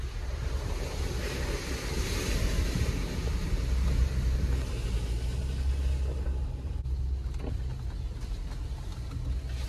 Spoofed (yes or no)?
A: no